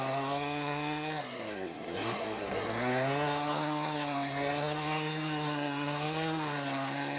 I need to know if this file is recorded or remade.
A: remade